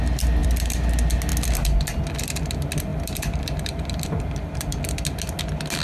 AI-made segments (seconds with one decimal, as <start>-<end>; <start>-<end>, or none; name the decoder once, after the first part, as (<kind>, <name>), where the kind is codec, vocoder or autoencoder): 0.4-0.9 (vocoder, BigVGAN v2); 2.9-4.8